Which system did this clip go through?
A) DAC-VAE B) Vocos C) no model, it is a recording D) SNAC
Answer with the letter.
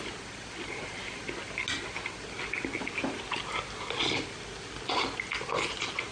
C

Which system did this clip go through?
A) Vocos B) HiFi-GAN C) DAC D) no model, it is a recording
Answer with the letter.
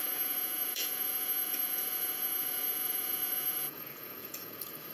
A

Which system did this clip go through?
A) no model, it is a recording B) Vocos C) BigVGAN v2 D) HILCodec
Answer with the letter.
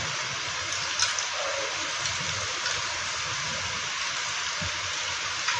A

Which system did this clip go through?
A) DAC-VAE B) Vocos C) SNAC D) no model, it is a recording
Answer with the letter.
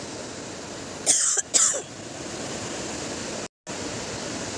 D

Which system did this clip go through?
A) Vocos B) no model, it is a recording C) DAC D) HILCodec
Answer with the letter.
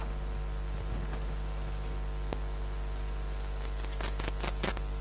B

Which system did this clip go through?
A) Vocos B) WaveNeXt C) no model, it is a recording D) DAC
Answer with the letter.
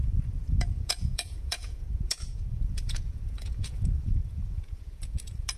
A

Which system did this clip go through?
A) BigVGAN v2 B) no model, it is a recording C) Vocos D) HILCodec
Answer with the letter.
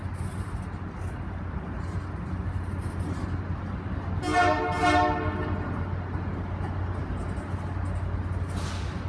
B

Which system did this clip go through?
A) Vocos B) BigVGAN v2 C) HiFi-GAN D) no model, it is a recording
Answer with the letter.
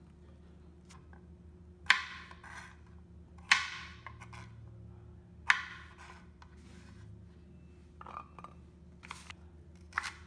D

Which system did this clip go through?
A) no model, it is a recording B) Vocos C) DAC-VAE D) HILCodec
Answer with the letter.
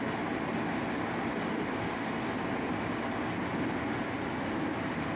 A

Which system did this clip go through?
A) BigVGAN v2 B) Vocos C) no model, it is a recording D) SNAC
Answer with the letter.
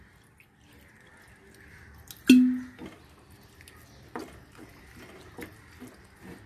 C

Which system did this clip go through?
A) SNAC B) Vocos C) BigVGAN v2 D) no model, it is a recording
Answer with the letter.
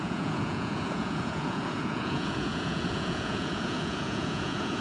B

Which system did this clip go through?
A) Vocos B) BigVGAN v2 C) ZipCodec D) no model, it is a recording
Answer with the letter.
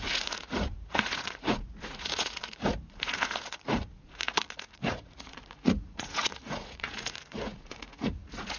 A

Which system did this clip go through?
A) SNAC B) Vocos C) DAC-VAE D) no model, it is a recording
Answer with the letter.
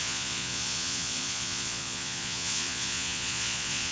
B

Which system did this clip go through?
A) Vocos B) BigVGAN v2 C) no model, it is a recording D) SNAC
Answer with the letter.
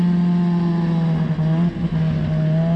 C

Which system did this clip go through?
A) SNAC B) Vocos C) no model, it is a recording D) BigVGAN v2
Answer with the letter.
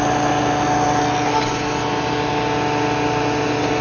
C